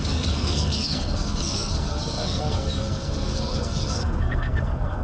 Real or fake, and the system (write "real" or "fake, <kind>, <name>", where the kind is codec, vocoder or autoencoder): fake, codec, SNAC